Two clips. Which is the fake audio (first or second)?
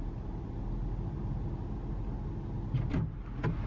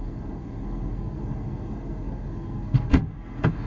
second